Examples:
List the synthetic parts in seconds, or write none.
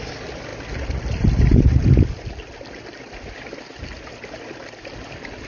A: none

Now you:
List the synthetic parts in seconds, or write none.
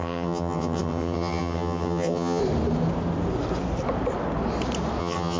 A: 0.0-2.4 (vocoder, HiFi-GAN); 5.0-5.4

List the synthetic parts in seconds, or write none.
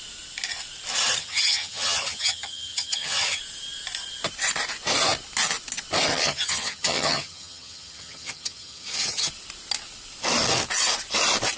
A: 1.2-3.4 (vocoder, HiFi-GAN); 6.1-9.3